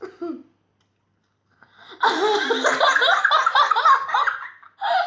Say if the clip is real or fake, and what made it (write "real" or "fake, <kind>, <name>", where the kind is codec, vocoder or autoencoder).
real